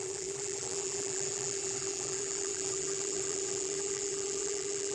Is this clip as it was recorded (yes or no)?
no